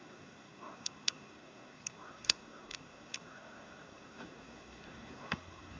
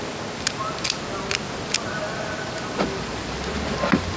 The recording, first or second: second